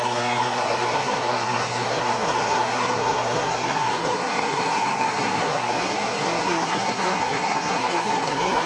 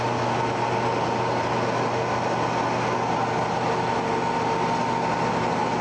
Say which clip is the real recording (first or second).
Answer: second